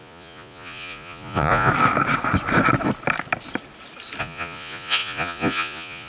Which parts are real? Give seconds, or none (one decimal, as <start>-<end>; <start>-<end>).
1.7-4.2